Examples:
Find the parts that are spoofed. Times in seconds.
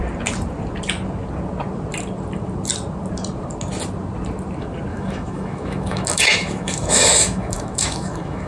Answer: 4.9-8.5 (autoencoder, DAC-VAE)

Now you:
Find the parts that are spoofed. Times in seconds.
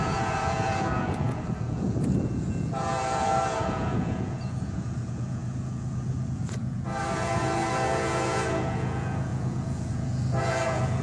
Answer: 0.0-11.0 (vocoder, Vocos)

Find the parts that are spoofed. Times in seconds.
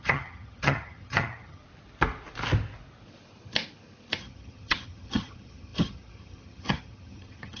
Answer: 0.0-1.6 (vocoder, HiFi-GAN); 4.2-7.6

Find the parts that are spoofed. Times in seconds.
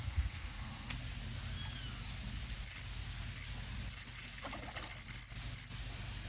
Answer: 0.0-0.9 (codec, SNAC)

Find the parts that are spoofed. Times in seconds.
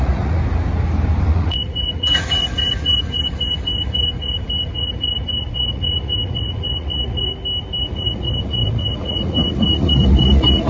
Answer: 0.0-0.4 (vocoder, Vocos); 1.2-7.3; 7.8-10.7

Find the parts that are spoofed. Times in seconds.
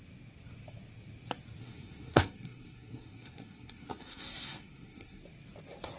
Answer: 1.6-5.2 (codec, SNAC)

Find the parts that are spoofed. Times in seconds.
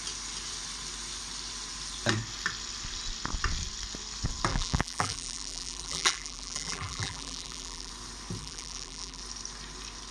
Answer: 4.5-7.9 (vocoder, BigVGAN v2); 8.4-9.2